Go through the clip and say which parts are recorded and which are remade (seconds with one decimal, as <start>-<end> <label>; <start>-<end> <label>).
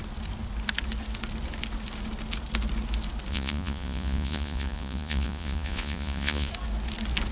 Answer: 0.0-3.3 recorded; 3.3-6.5 remade; 6.5-7.3 recorded